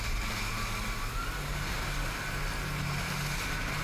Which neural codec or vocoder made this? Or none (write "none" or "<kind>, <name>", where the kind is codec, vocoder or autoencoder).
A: none